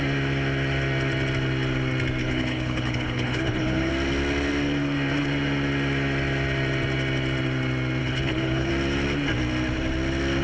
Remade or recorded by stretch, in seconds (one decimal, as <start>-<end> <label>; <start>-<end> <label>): 0.0-2.2 recorded; 2.2-3.9 remade; 3.9-8.0 recorded; 8.0-8.7 remade; 8.7-10.4 recorded